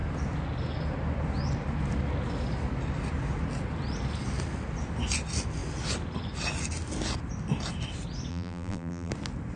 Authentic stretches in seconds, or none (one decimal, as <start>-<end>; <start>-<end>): 0.0-8.3; 9.1-9.6